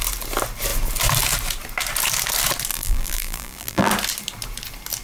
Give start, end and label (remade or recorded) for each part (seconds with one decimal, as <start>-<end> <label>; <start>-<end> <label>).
0.0-2.7 recorded; 2.7-3.9 remade; 3.9-5.0 recorded